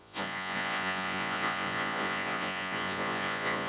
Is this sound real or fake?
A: fake